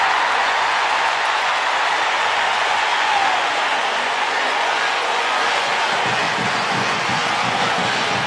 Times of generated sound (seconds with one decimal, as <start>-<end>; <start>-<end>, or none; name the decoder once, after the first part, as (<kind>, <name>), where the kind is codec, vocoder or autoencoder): 0.0-1.5 (vocoder, Vocos); 2.1-8.3

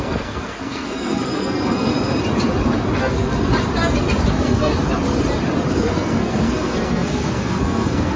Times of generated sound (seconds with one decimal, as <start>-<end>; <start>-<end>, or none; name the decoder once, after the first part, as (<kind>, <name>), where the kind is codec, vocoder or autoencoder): 0.0-1.9 (codec, SNAC); 3.0-3.5; 4.3-4.7; 5.7-8.2